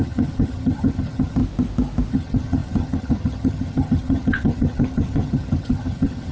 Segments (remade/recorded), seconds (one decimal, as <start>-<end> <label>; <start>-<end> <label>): 0.0-1.4 remade; 1.4-2.1 recorded; 2.1-6.3 remade